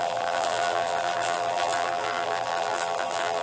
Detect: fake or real fake